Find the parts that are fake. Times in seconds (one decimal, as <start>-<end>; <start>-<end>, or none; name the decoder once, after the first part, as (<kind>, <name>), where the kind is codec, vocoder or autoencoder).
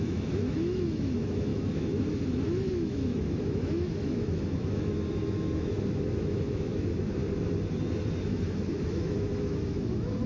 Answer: 0.0-7.2 (autoencoder, DAC-VAE); 8.2-10.3